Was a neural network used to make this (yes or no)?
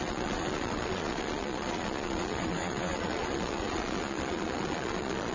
yes